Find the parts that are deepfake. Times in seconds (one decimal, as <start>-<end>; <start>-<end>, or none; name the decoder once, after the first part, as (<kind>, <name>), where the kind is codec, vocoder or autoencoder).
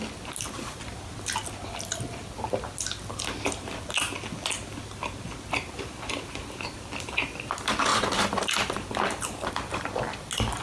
7.9-9.5 (vocoder, BigVGAN v2)